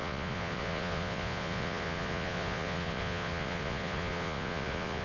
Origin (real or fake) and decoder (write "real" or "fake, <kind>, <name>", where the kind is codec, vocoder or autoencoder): fake, vocoder, Vocos